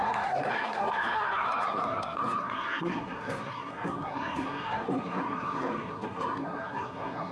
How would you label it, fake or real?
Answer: fake